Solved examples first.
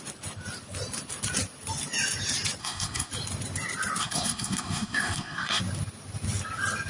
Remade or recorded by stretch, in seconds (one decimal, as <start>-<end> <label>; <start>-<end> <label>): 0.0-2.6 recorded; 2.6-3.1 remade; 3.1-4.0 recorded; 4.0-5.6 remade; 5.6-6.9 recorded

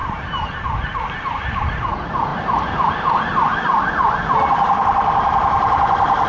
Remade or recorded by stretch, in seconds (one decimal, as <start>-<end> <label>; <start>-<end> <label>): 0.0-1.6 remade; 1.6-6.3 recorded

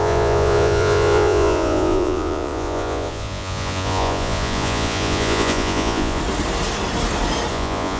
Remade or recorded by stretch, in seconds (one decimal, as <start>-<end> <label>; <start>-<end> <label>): 0.0-6.2 remade; 6.2-7.5 recorded; 7.5-8.0 remade

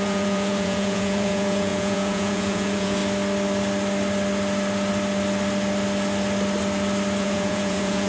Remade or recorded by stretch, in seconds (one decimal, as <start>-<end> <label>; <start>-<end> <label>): 0.0-3.0 remade; 3.0-7.2 recorded; 7.2-8.1 remade